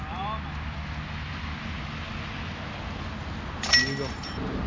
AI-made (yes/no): no